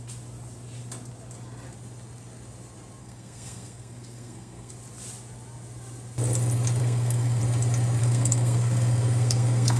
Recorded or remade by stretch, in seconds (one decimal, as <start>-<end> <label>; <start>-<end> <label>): 0.0-3.0 recorded; 3.0-4.7 remade; 4.7-6.8 recorded; 6.8-7.4 remade; 7.4-8.0 recorded; 8.0-9.8 remade